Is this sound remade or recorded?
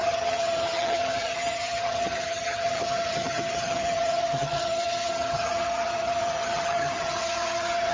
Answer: remade